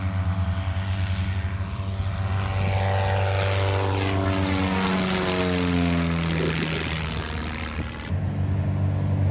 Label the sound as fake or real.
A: real